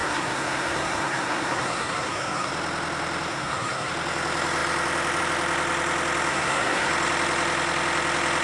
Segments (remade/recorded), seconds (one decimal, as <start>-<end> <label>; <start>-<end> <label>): 0.0-2.5 remade; 2.5-3.3 recorded; 3.3-3.9 remade; 3.9-6.3 recorded; 6.3-6.9 remade; 6.9-8.4 recorded